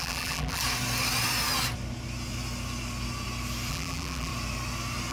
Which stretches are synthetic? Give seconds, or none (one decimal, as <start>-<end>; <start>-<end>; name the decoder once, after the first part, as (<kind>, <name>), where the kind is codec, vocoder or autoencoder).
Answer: 0.0-0.6 (vocoder, BigVGAN v2); 3.7-4.3